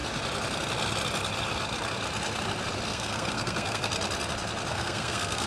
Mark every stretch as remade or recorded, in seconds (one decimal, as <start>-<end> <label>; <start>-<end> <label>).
0.0-2.9 recorded; 2.9-3.9 remade; 3.9-4.7 recorded; 4.7-5.5 remade